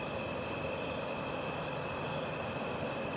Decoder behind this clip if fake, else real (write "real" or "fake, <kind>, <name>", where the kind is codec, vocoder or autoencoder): real